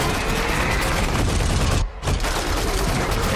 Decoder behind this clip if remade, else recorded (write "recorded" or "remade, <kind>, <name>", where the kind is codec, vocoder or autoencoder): recorded